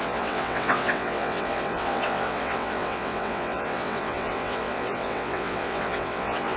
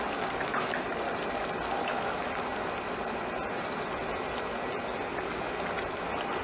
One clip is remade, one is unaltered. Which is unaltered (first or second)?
second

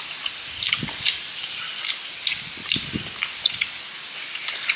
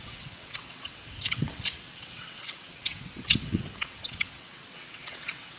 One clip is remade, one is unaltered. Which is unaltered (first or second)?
first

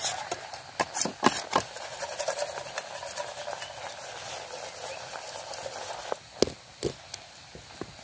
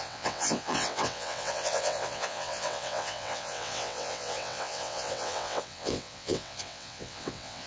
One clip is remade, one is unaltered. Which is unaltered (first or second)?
first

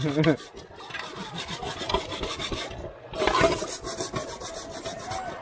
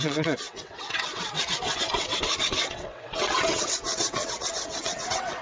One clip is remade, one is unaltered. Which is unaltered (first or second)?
first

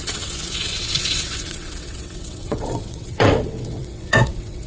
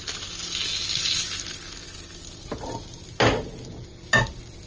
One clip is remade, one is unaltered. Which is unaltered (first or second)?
second